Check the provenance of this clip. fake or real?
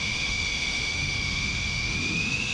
fake